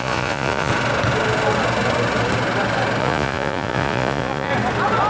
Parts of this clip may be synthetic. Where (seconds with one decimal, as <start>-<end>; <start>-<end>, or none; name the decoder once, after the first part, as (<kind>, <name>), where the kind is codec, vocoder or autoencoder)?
0.0-0.7 (vocoder, Vocos); 3.0-4.5